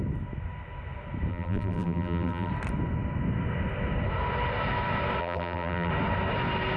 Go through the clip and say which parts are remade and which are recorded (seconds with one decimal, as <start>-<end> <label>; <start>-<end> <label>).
0.0-1.3 recorded; 1.3-2.5 remade; 2.5-5.2 recorded; 5.2-5.9 remade; 5.9-6.8 recorded